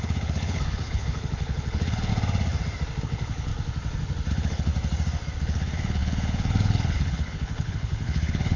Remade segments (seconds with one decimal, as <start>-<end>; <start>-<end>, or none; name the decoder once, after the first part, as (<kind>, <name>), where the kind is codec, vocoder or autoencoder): 0.0-2.1 (codec, HILCodec); 3.0-3.5; 4.3-4.7; 5.4-8.6